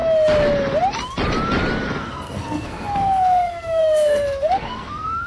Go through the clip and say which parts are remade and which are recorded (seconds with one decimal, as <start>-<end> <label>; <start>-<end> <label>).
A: 0.0-2.0 recorded; 2.0-5.3 remade